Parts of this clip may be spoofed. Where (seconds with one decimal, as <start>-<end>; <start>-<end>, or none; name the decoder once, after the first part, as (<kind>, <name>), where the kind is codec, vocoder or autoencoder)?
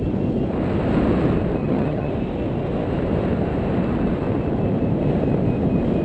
1.6-2.1 (vocoder, HiFi-GAN)